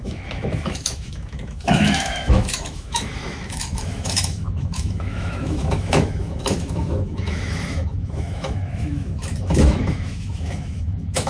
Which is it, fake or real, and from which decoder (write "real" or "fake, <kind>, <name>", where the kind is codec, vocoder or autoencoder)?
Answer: fake, autoencoder, DAC-VAE